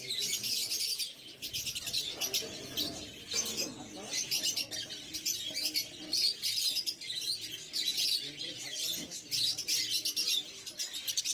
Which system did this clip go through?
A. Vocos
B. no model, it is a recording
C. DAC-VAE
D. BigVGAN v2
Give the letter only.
B